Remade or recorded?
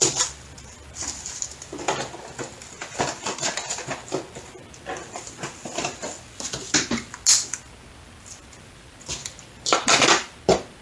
recorded